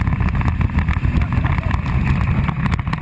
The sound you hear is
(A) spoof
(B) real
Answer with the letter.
B